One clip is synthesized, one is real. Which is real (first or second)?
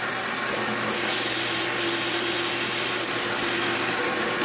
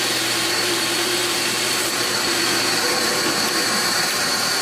first